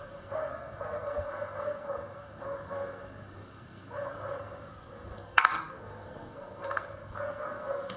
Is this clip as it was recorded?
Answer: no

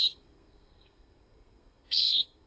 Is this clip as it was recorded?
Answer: no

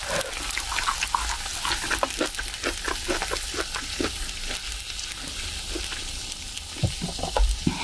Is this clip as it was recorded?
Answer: yes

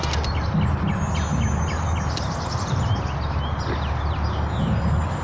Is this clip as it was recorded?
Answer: yes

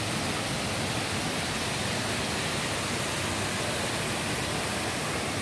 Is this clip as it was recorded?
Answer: yes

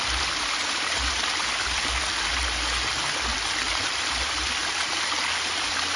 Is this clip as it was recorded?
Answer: yes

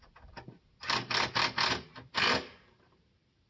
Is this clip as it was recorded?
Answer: yes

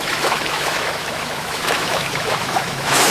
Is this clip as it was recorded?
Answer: no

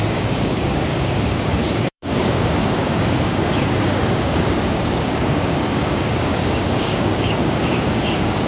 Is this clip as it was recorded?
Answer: no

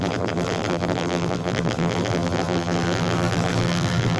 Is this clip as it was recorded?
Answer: no